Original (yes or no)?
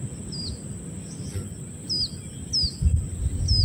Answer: yes